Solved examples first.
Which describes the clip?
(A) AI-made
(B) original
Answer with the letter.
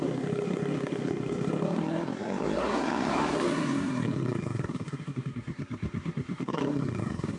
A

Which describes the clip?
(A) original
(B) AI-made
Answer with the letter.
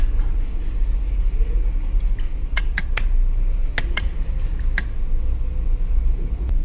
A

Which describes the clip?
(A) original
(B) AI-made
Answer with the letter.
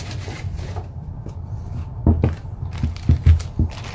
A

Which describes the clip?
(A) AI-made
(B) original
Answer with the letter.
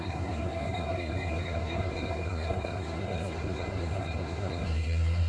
A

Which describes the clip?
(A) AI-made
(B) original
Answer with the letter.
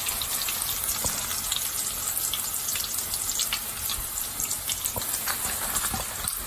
B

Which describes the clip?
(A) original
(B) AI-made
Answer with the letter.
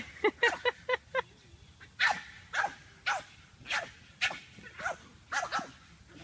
A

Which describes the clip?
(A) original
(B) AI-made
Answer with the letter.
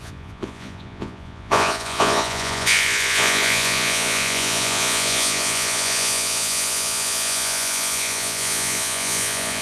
B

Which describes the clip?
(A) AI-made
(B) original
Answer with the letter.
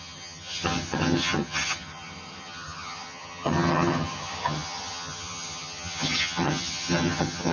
A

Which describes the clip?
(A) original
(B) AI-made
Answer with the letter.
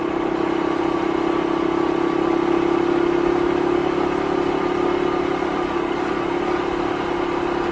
A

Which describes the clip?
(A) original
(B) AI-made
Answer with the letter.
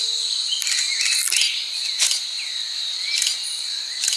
A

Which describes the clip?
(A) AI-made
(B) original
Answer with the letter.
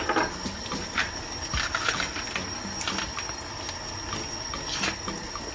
B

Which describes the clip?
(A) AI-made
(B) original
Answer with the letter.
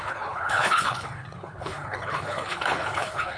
A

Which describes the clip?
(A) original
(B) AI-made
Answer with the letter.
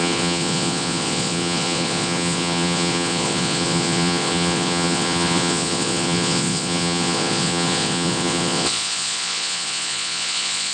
B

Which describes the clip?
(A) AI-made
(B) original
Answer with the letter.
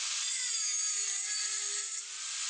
B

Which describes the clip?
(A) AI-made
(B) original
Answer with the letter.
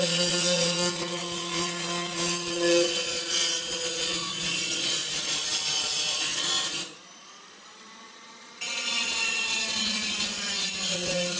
A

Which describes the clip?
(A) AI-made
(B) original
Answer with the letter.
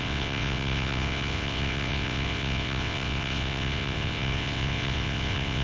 A